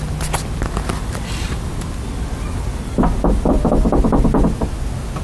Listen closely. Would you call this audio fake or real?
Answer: real